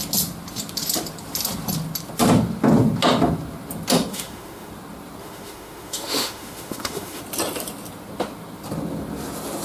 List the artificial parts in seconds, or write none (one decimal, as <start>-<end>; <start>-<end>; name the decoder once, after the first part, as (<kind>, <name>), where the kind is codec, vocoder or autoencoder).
4.1-4.7 (autoencoder, DAC-VAE); 5.2-7.2